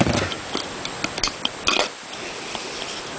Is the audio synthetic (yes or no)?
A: no